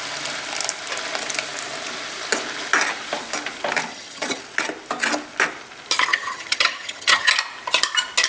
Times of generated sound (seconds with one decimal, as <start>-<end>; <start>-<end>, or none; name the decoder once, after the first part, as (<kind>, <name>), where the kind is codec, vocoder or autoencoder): 3.9-4.4 (vocoder, HiFi-GAN); 6.1-7.3

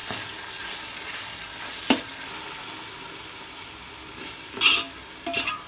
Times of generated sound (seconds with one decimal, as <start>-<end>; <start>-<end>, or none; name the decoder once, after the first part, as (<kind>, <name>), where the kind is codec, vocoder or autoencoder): none

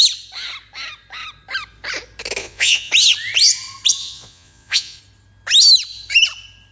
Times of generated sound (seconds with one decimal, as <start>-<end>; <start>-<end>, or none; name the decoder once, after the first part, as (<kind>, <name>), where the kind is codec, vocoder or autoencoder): 2.4-2.9 (vocoder, Vocos); 4.0-5.0

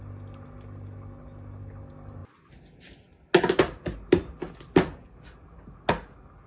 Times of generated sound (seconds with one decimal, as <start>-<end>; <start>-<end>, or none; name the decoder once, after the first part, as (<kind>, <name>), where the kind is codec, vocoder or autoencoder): none

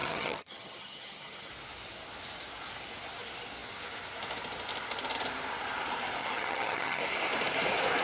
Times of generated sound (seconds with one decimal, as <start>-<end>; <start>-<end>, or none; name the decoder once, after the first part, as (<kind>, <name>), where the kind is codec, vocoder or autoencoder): 0.0-1.5 (vocoder, HiFi-GAN); 6.2-7.0